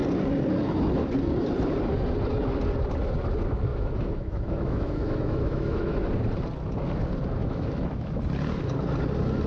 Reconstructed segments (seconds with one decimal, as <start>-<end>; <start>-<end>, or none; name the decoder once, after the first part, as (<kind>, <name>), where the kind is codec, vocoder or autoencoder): 3.7-6.1 (autoencoder, DAC-VAE); 7.4-8.2